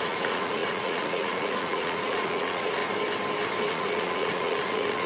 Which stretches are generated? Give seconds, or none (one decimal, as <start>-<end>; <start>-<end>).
0.0-2.8; 3.7-5.1